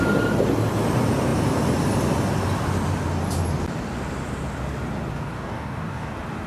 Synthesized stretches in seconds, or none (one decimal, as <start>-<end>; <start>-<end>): 5.1-6.1